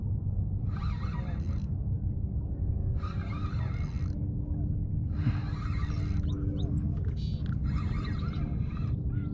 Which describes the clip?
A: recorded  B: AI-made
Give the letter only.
A